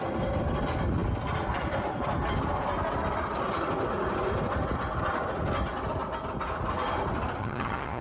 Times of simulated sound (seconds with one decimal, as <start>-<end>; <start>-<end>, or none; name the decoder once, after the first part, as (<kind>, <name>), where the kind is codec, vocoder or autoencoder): 7.4-8.0 (vocoder, HiFi-GAN)